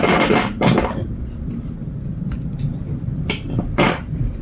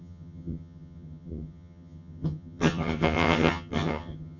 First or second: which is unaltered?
first